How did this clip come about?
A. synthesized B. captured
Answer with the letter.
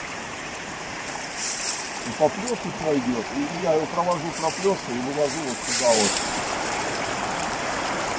A